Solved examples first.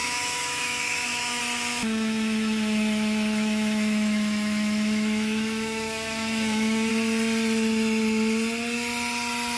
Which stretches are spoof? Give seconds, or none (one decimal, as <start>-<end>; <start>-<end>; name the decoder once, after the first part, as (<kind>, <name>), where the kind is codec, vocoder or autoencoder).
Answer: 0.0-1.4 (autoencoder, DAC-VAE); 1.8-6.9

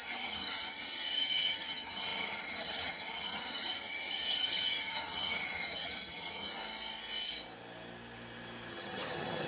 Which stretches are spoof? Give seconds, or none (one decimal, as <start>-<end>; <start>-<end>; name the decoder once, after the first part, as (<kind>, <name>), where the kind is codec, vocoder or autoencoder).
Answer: 0.0-6.6 (vocoder, HiFi-GAN); 8.7-9.5

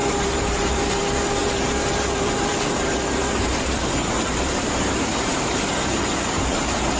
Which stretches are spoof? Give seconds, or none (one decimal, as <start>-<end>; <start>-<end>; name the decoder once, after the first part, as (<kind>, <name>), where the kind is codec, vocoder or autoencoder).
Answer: 0.0-1.0 (vocoder, BigVGAN v2); 1.4-5.6